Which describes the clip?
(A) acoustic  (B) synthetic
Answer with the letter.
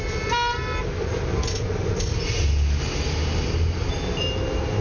A